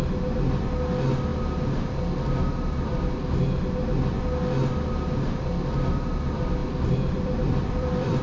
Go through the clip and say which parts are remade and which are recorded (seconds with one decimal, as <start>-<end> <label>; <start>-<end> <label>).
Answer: 0.0-6.6 recorded; 6.6-8.2 remade